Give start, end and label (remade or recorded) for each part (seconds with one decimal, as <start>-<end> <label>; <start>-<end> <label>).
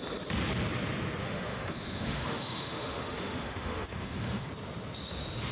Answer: 0.0-1.2 recorded; 1.2-4.5 remade; 4.5-5.5 recorded